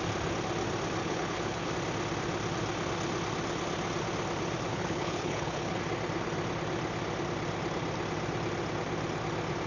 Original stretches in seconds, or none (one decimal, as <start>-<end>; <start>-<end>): 0.0-1.0; 1.7-4.7; 5.8-9.7

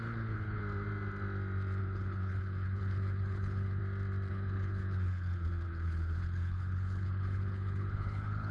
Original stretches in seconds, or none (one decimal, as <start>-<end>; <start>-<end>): 0.6-1.8; 3.8-4.3